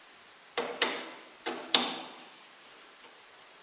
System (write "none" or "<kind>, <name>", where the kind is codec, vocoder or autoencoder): none